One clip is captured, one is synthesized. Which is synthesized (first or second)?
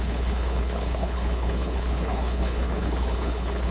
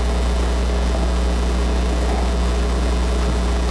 first